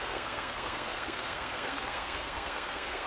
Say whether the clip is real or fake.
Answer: fake